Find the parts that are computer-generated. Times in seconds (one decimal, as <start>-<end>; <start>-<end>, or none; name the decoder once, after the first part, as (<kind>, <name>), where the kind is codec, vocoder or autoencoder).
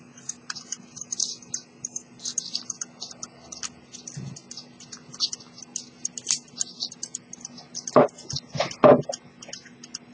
none